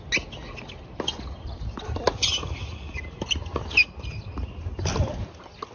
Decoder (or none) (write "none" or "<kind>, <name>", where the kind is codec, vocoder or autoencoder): none